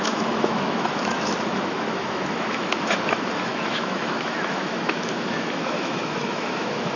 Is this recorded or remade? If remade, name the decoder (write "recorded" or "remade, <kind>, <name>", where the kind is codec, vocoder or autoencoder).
remade, autoencoder, DAC-VAE